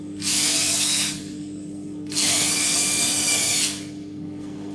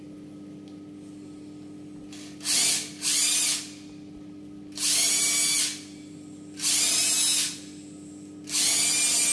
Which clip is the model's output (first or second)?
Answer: first